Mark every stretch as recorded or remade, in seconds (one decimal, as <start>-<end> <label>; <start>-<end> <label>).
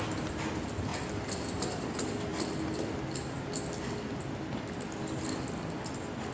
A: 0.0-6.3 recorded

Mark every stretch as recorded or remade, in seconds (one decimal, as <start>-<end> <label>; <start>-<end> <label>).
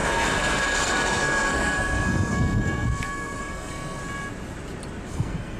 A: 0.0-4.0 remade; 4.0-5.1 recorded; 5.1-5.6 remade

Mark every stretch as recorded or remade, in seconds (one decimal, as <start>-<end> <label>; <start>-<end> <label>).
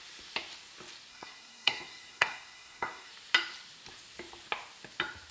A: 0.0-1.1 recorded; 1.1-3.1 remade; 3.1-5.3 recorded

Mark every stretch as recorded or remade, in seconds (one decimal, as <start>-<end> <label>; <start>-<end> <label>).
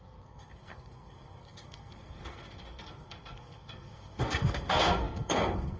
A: 0.0-5.8 remade